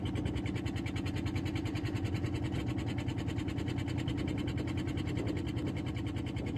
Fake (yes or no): no